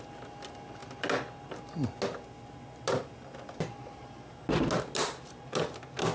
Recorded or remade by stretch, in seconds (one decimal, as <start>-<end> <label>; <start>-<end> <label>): 0.0-6.1 recorded